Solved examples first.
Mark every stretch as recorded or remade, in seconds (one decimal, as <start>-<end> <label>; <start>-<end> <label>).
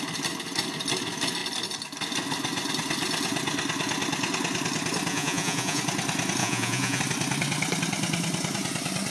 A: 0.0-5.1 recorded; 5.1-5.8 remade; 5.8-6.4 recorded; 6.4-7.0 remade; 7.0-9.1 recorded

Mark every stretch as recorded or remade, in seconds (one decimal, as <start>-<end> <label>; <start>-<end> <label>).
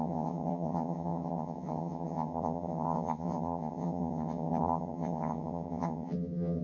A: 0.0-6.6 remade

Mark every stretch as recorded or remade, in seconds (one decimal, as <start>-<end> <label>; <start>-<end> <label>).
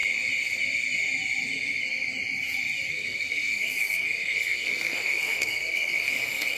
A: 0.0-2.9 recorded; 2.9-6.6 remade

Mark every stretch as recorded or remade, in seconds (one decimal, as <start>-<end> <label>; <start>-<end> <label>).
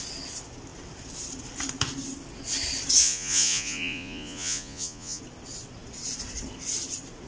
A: 0.0-3.0 recorded; 3.0-5.2 remade; 5.2-7.3 recorded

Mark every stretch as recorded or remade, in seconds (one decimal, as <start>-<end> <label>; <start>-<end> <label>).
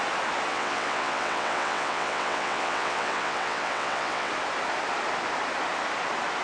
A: 0.0-0.5 recorded; 0.5-4.3 remade; 4.3-6.4 recorded